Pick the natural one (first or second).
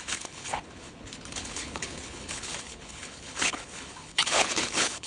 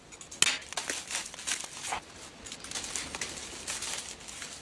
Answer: second